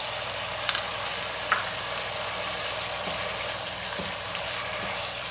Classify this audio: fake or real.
real